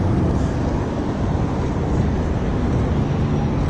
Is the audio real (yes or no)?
yes